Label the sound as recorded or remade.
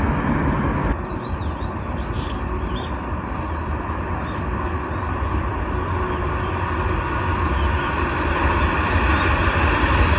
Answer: recorded